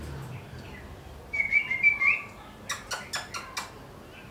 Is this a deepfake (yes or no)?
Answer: no